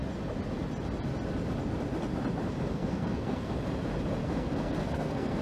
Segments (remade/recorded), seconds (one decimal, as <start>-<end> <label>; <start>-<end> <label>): 0.0-2.7 recorded; 2.7-3.5 remade; 3.5-4.2 recorded; 4.2-5.4 remade